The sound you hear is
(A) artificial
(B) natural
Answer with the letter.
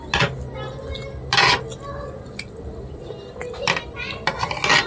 B